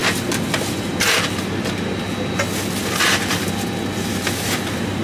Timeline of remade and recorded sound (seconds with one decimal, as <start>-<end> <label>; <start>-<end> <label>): 0.0-5.0 recorded